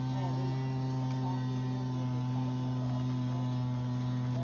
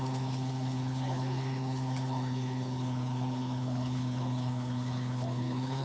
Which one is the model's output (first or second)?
second